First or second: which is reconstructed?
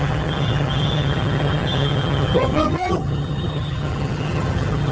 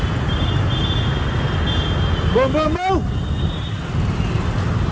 first